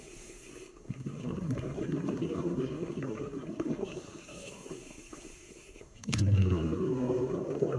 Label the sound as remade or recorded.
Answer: remade